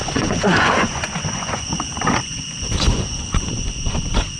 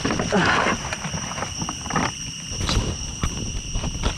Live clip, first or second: second